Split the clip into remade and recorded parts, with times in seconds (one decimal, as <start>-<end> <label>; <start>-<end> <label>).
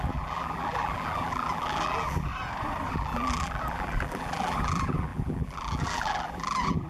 0.0-2.3 remade; 2.3-2.9 recorded; 2.9-6.9 remade